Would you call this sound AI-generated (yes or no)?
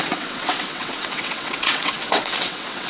yes